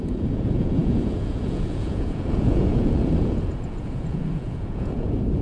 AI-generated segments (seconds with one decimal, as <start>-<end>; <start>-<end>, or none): 0.0-5.4